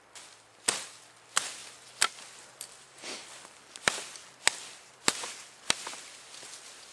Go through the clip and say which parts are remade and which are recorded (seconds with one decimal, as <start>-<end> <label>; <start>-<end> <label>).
0.0-6.9 recorded